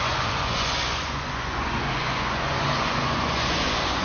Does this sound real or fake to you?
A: fake